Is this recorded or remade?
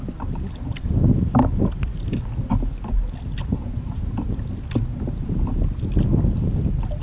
recorded